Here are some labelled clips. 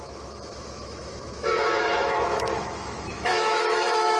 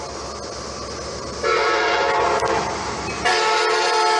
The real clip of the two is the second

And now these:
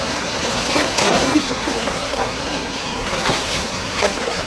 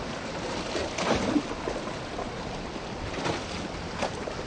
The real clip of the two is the second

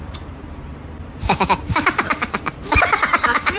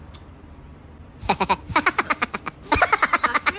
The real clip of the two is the second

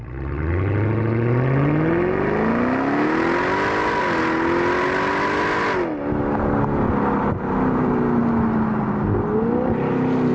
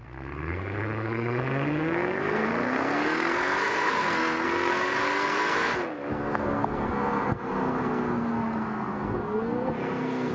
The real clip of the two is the first